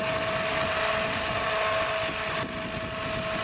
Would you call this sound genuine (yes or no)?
yes